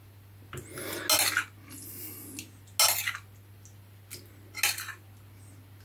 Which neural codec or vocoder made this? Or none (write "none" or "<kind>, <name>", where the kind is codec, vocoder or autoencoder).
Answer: none